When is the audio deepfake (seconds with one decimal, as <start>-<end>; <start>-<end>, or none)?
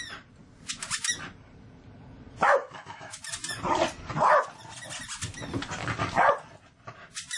2.6-3.2